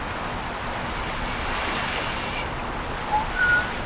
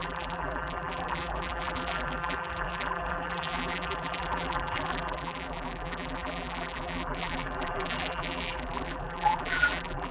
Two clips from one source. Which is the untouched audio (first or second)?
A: first